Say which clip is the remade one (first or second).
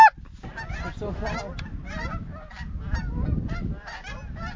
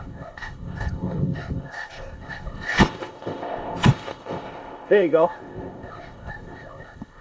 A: second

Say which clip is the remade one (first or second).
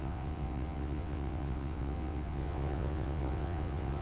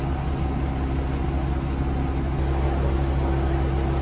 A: first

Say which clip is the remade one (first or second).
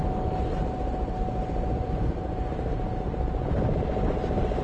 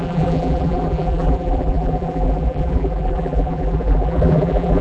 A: second